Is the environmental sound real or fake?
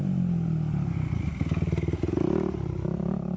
real